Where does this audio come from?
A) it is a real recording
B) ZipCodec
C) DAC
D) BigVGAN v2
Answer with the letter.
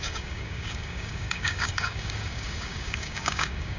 C